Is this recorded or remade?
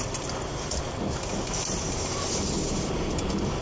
recorded